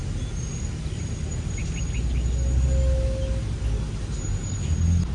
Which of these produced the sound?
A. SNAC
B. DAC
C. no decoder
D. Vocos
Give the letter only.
C